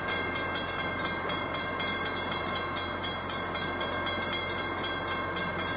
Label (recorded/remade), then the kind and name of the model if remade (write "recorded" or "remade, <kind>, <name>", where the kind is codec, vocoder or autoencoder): recorded